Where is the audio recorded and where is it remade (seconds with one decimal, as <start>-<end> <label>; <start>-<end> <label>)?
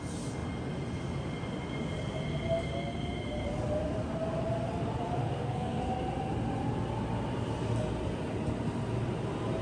0.0-5.2 recorded; 5.2-5.8 remade; 5.8-9.6 recorded